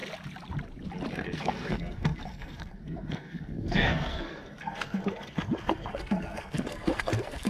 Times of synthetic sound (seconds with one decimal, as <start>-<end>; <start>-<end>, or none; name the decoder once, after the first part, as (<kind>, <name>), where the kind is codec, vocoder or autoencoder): 1.1-7.5 (codec, SNAC)